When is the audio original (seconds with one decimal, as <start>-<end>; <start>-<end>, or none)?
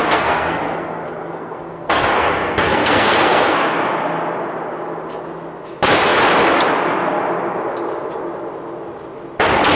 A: 3.7-9.8